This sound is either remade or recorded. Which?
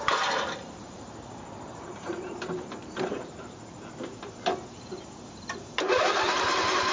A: remade